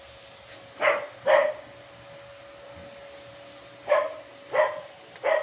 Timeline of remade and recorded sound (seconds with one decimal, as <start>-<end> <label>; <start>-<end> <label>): 0.0-1.4 recorded; 1.4-1.9 remade; 1.9-3.3 recorded; 3.3-4.7 remade; 4.7-5.4 recorded